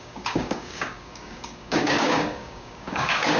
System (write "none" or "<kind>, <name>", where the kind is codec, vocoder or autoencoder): codec, DAC